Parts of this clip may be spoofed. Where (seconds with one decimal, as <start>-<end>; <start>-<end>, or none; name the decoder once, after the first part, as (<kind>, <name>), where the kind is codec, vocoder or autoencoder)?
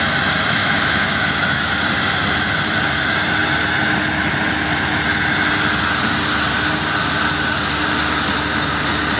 0.6-1.7 (autoencoder, DAC-VAE)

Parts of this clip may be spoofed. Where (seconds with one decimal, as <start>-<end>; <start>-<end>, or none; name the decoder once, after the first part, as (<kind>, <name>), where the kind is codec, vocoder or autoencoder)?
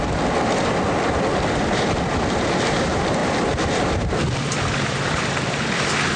0.0-6.2 (vocoder, BigVGAN v2)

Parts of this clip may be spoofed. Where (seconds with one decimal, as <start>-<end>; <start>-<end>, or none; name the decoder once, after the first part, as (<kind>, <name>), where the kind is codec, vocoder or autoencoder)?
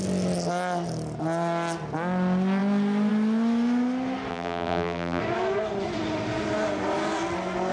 4.3-5.2 (vocoder, BigVGAN v2)